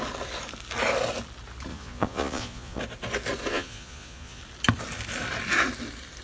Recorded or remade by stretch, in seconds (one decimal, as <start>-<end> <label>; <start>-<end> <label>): 0.0-1.7 recorded; 1.7-2.8 remade; 2.8-3.5 recorded; 3.5-4.4 remade; 4.4-6.2 recorded